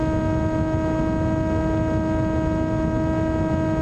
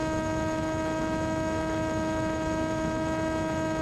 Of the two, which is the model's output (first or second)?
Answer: second